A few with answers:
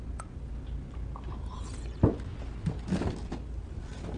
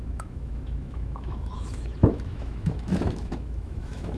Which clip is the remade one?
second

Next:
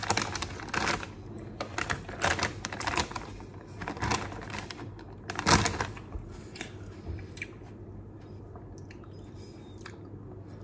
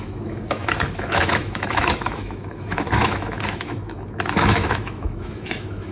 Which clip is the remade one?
second